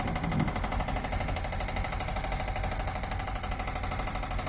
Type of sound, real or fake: real